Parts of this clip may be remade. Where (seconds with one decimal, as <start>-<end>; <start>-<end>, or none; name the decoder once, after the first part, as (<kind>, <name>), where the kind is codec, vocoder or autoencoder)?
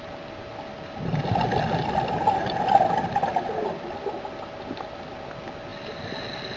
none